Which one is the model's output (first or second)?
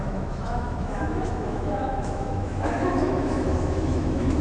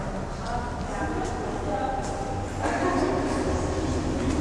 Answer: first